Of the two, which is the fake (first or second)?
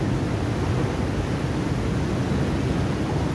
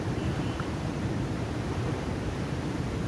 second